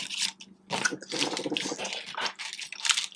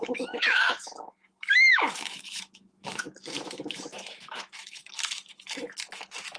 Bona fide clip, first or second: first